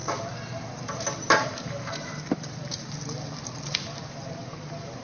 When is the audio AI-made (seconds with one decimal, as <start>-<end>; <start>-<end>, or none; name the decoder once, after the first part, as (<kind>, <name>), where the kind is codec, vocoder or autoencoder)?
0.0-3.0 (vocoder, BigVGAN v2)